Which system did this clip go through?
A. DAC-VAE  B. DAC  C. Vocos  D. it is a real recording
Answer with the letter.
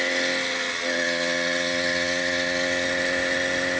D